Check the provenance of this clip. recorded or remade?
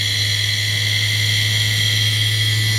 recorded